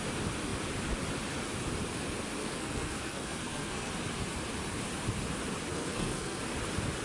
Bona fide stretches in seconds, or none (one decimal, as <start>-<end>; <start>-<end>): 0.0-2.4; 3.9-5.7; 6.4-7.0